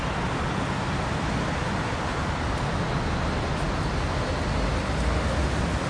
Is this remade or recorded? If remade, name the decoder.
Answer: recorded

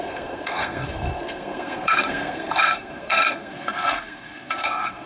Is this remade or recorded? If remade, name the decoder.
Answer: remade, codec, SNAC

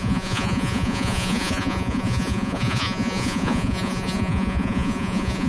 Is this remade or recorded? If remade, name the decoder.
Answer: remade, vocoder, Vocos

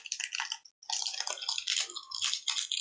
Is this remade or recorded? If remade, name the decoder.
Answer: recorded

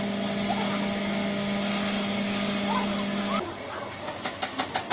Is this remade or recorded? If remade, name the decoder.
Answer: recorded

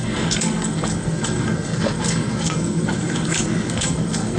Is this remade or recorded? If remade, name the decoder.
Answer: remade, codec, SNAC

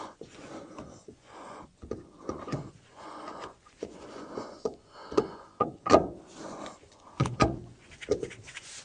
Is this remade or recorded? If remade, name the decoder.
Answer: remade, vocoder, Vocos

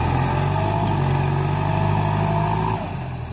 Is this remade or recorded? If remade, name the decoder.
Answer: recorded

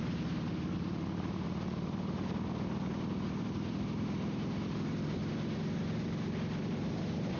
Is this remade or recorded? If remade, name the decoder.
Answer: remade, vocoder, BigVGAN v2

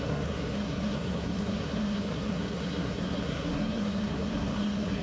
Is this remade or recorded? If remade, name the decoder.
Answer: remade, codec, SNAC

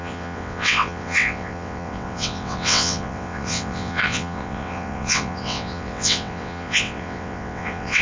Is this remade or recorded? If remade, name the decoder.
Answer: remade, vocoder, WaveNeXt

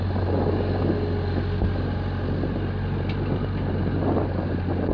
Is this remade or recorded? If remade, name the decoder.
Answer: recorded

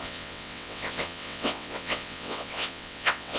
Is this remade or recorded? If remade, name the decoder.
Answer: remade, vocoder, WaveNeXt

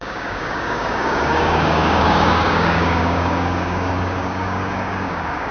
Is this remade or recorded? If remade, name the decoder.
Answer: remade, codec, DAC